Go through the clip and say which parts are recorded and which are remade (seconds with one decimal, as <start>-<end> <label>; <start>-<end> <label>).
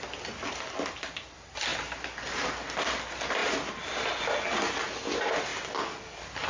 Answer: 0.0-6.5 recorded